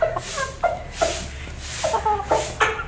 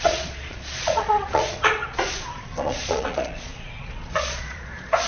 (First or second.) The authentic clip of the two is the first